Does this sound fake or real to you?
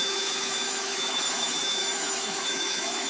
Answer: fake